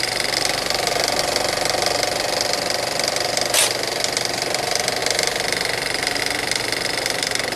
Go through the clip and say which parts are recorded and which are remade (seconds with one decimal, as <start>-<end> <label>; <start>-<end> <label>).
0.0-7.6 recorded

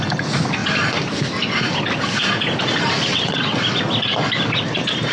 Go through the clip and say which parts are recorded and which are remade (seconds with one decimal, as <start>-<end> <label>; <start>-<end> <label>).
0.0-3.1 recorded; 3.1-3.6 remade; 3.6-5.1 recorded